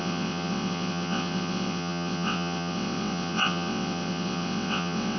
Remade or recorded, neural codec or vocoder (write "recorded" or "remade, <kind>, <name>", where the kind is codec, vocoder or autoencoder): remade, vocoder, WaveNeXt